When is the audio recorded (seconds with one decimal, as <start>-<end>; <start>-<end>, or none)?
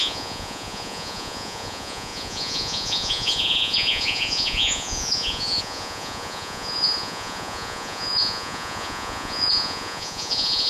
none